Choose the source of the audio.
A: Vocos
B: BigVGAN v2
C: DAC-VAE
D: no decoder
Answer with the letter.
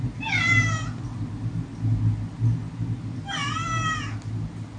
D